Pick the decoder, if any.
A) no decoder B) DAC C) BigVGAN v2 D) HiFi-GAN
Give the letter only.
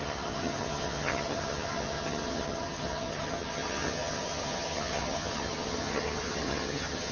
D